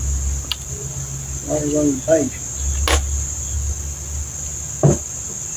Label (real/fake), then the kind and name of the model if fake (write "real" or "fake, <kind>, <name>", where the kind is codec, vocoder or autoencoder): real